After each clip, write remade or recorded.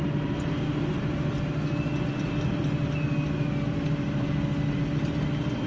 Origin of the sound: recorded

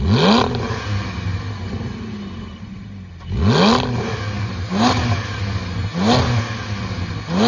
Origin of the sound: recorded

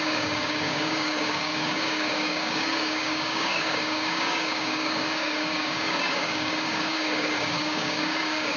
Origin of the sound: remade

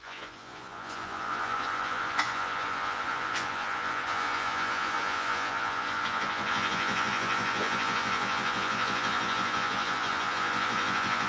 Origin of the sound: remade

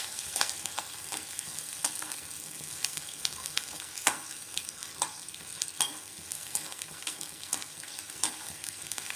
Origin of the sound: remade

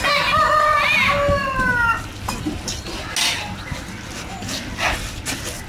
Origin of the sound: recorded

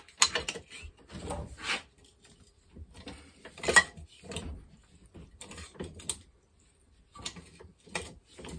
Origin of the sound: recorded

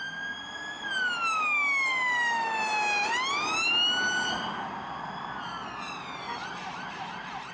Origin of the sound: recorded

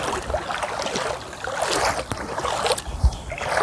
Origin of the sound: recorded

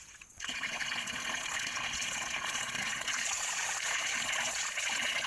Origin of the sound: remade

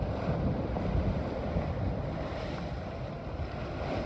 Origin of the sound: recorded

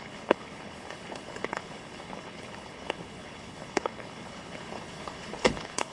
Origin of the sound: remade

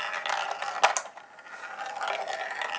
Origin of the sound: recorded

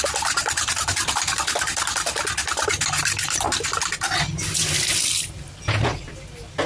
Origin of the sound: recorded